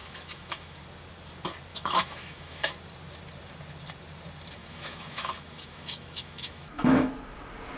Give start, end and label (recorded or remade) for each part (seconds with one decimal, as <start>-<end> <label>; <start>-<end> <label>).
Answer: 0.0-0.8 remade; 0.8-1.7 recorded; 1.7-2.7 remade; 2.7-4.6 recorded; 4.6-7.1 remade; 7.1-7.8 recorded